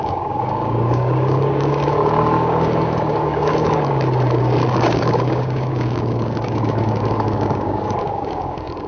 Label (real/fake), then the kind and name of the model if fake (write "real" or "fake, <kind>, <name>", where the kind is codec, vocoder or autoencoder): fake, codec, DAC